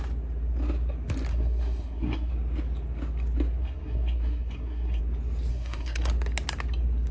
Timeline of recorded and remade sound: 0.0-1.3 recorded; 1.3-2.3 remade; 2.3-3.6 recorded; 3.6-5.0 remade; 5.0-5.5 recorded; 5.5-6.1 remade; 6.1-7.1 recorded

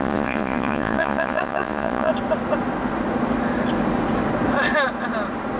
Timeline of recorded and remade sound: 0.0-2.1 remade; 2.1-5.6 recorded

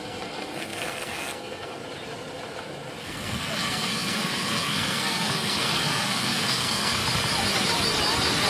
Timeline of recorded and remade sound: 0.0-1.8 remade; 1.8-3.0 recorded; 3.0-7.0 remade; 7.0-8.5 recorded

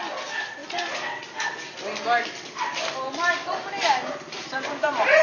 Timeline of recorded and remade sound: 0.0-5.2 recorded

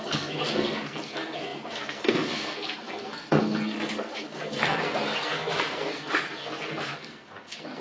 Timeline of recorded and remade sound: 0.0-7.8 remade

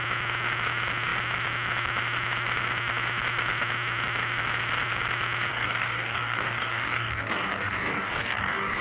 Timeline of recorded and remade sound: 0.0-5.5 recorded; 5.5-8.8 remade

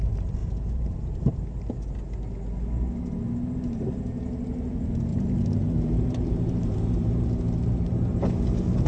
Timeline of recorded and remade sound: 0.0-0.4 recorded; 0.4-1.3 remade; 1.3-5.1 recorded; 5.1-8.3 remade; 8.3-8.9 recorded

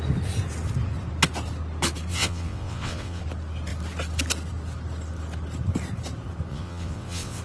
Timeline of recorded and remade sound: 0.0-2.1 recorded; 2.1-3.2 remade; 3.2-6.5 recorded; 6.5-7.4 remade